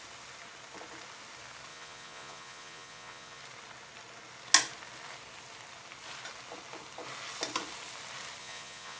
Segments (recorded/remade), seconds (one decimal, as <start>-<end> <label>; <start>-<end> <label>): 0.0-1.7 recorded; 1.7-3.4 remade; 3.4-8.4 recorded; 8.4-9.0 remade